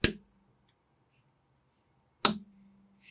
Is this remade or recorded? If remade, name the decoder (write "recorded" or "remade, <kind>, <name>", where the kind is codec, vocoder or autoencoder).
recorded